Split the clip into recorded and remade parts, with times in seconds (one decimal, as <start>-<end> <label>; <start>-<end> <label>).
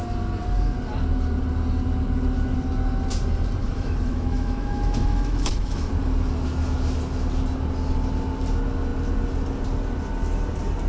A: 0.0-3.6 recorded; 3.6-5.9 remade; 5.9-10.9 recorded